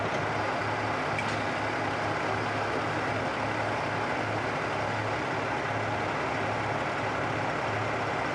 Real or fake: real